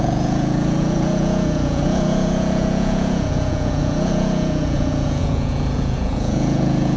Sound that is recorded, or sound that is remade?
remade